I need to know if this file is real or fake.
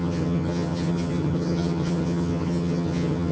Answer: fake